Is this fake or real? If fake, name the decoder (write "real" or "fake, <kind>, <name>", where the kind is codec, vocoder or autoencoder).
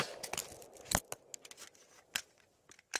real